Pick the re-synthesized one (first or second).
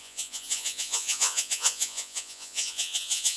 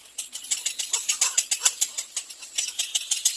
first